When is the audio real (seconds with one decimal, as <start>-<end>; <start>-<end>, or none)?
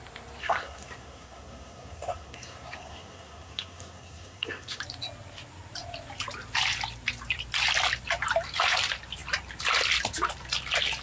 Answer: 0.0-0.4; 4.8-11.0